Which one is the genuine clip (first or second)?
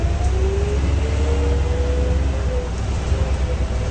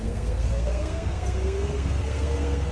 first